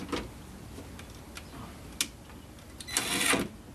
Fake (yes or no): no